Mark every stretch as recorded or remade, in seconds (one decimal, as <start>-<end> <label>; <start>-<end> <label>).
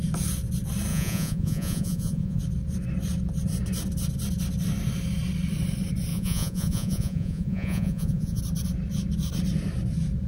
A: 0.0-0.9 recorded; 0.9-2.4 remade; 2.4-6.1 recorded; 6.1-8.4 remade; 8.4-10.3 recorded